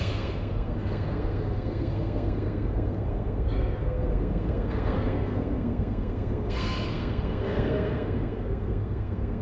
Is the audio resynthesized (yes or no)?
yes